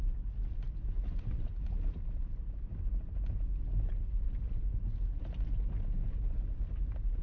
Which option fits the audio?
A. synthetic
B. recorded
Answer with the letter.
B